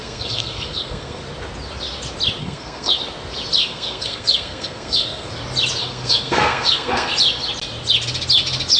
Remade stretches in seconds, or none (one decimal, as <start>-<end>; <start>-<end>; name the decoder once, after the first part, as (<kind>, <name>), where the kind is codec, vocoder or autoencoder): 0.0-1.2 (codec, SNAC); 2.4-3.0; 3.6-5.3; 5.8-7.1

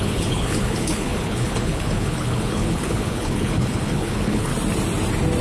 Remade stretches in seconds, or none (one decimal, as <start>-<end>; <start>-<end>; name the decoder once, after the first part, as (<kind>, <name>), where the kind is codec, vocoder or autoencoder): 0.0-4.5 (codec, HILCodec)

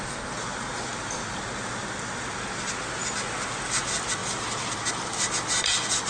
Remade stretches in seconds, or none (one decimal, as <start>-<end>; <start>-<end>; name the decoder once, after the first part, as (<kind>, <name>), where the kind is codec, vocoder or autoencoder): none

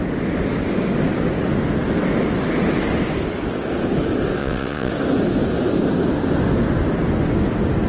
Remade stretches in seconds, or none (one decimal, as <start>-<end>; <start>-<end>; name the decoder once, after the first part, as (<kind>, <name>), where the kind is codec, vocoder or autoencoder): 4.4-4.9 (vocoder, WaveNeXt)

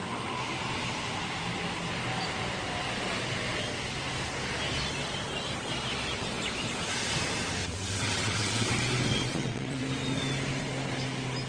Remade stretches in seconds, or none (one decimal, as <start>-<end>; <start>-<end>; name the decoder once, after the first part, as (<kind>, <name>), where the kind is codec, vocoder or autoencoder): 7.6-8.7 (vocoder, WaveNeXt); 9.1-9.8